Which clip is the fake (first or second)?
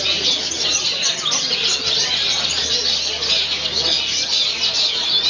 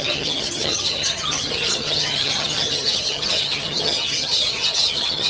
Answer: second